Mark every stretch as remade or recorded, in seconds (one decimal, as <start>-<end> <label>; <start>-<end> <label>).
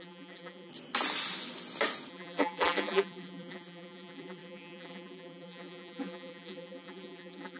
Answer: 0.0-0.7 remade; 0.7-2.1 recorded; 2.1-7.6 remade